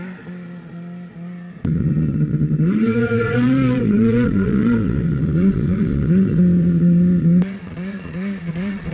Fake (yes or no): yes